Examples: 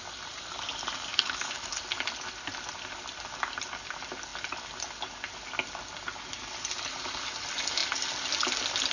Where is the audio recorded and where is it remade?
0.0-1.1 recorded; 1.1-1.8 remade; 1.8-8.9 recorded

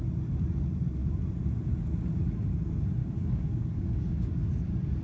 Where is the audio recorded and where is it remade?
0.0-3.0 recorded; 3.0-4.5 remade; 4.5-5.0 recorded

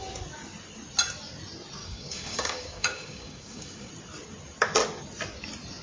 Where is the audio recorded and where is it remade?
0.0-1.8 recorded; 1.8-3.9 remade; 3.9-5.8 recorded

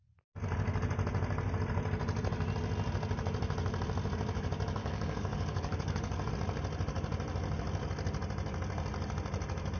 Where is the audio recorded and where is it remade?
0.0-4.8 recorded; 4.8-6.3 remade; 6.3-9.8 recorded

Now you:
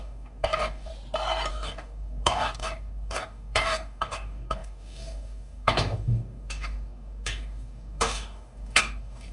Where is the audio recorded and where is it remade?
0.0-0.9 remade; 0.9-1.5 recorded; 1.5-9.3 remade